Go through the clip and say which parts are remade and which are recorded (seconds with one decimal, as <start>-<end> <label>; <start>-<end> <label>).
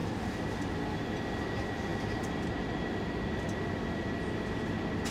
0.0-5.1 recorded